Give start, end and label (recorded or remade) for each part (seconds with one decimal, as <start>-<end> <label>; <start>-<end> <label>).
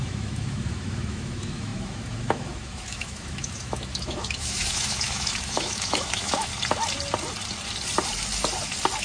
0.0-6.5 remade; 6.5-9.0 recorded